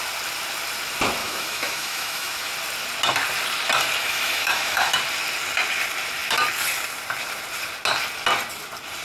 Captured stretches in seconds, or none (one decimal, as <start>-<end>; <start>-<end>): 0.0-1.2; 2.5-4.0; 4.9-9.0

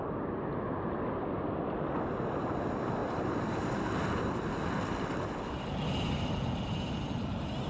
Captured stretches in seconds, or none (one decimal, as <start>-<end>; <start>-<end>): 0.0-3.0; 3.8-7.7

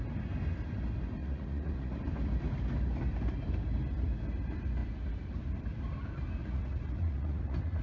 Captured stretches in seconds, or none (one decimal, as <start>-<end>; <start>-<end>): 0.0-1.2; 2.0-6.4

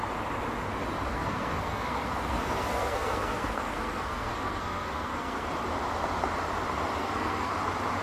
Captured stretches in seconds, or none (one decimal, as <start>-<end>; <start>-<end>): 0.0-1.1; 5.5-7.0; 7.5-8.0

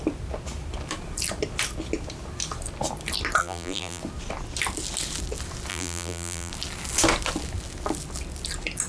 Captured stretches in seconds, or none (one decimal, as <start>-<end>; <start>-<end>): 0.0-3.4; 4.0-5.7; 6.5-8.9

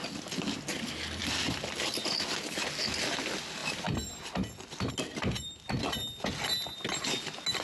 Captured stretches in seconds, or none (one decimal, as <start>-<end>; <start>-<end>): 0.0-7.6

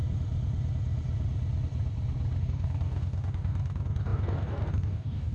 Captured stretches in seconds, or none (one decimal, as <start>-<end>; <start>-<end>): 0.0-2.4